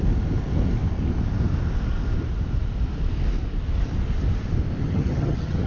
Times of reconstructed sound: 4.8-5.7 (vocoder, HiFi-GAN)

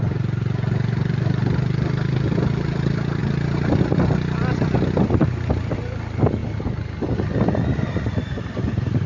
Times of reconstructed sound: none

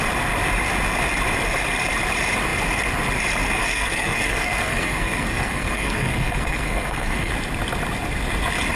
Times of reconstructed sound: 3.6-7.3 (codec, SNAC)

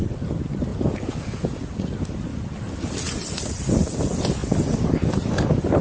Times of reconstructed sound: 0.7-1.9 (vocoder, Vocos)

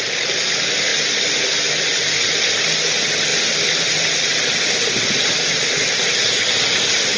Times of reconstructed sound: 3.3-4.9 (vocoder, BigVGAN v2)

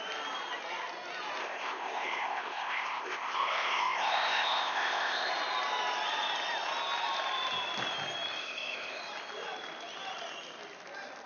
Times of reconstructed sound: 1.4-5.3 (codec, ZipCodec); 8.4-9.0